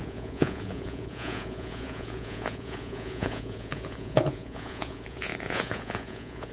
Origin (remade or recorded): remade